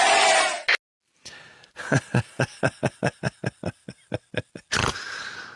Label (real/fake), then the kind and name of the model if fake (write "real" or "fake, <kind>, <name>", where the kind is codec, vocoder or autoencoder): real